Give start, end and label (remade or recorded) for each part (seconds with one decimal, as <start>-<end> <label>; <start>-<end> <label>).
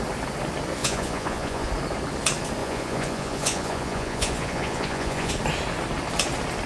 0.0-0.8 recorded; 0.8-1.7 remade; 1.7-2.6 recorded; 2.6-5.3 remade; 5.3-6.7 recorded